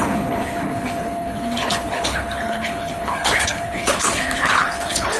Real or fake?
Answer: fake